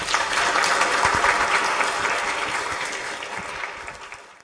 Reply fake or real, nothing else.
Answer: real